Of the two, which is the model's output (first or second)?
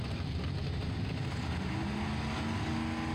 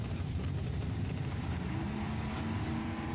second